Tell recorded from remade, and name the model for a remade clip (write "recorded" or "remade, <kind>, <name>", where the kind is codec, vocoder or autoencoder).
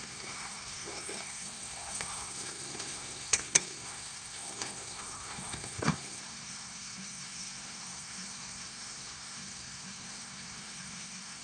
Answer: remade, codec, SNAC